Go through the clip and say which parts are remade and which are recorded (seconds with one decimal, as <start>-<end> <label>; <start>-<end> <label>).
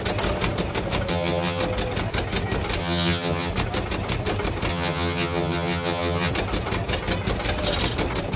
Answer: 0.0-1.1 recorded; 1.1-1.6 remade; 1.6-2.8 recorded; 2.8-3.5 remade; 3.5-4.7 recorded; 4.7-6.3 remade; 6.3-8.4 recorded